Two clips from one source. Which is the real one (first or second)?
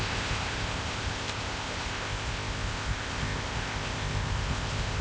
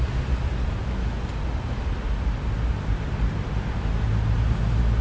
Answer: second